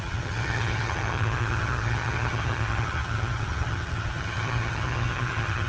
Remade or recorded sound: remade